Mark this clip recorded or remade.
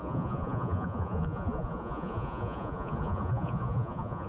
remade